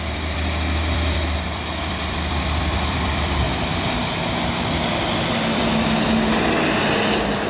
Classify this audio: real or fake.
fake